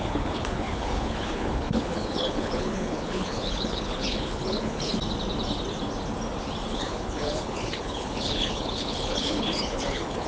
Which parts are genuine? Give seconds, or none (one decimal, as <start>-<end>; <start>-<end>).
4.9-6.7